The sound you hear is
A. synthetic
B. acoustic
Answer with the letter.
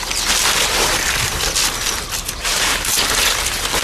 B